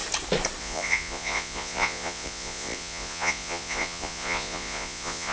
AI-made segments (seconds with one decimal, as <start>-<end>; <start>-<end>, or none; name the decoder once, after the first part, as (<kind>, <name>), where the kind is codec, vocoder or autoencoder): 0.6-5.3 (vocoder, Vocos)